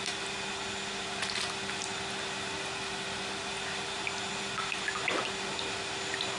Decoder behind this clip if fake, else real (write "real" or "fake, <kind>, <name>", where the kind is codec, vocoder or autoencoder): real